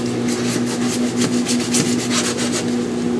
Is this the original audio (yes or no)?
yes